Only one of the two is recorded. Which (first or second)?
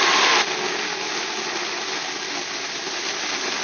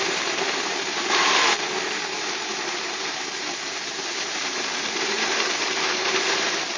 first